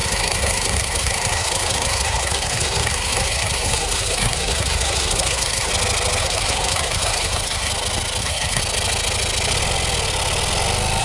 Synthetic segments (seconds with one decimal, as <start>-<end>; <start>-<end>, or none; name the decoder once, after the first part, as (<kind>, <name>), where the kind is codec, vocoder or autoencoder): 0.0-5.7 (codec, SNAC); 6.2-7.7; 8.2-8.6